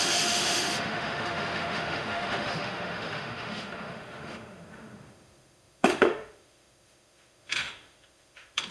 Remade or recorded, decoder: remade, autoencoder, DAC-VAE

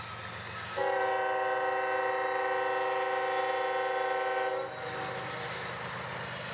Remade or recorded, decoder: recorded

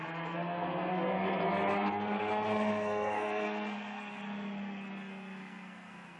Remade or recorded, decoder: remade, codec, SNAC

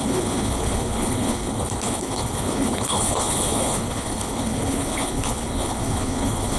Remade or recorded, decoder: remade, codec, HILCodec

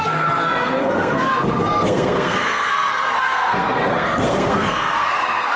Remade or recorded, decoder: remade, codec, SNAC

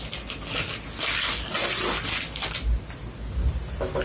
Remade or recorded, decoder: recorded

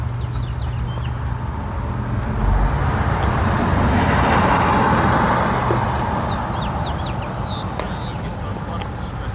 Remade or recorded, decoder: recorded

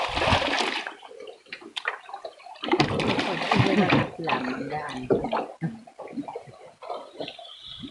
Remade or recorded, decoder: recorded